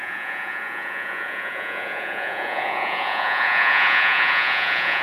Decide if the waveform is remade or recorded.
remade